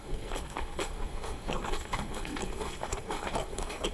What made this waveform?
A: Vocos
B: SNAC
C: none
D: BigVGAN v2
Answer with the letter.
B